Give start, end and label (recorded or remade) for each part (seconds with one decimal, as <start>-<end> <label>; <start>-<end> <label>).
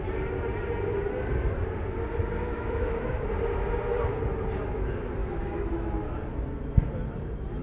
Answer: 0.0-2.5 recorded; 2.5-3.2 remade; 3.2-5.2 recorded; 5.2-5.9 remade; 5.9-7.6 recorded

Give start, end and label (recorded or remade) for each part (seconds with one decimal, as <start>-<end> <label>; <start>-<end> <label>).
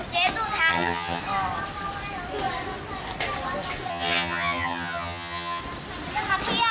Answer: 0.0-0.7 recorded; 0.7-1.2 remade; 1.2-3.9 recorded; 3.9-5.6 remade; 5.6-6.7 recorded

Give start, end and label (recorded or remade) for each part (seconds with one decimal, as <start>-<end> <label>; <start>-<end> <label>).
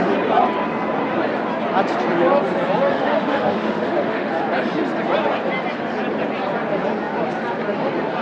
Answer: 0.0-2.9 recorded; 2.9-4.3 remade; 4.3-8.2 recorded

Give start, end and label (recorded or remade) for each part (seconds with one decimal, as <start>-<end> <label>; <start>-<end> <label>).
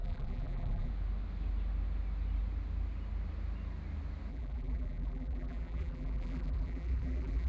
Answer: 0.0-0.9 remade; 0.9-4.3 recorded; 4.3-7.5 remade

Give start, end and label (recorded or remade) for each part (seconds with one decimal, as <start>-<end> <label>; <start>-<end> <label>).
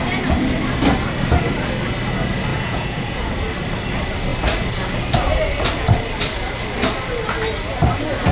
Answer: 0.0-2.5 recorded; 2.5-3.3 remade; 3.3-8.3 recorded